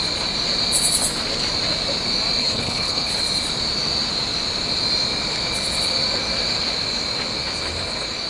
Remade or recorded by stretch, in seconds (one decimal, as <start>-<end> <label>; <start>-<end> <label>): 0.0-2.4 recorded; 2.4-3.2 remade; 3.2-8.3 recorded